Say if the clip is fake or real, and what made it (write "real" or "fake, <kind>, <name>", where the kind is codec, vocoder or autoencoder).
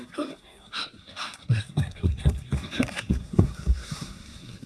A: fake, codec, SNAC